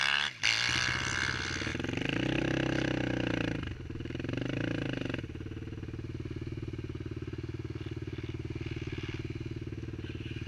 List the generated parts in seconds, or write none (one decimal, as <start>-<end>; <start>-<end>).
none